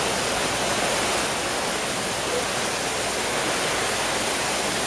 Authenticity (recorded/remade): recorded